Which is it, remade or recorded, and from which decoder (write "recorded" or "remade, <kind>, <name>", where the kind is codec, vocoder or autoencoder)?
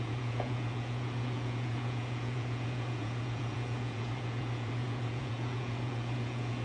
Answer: remade, vocoder, Vocos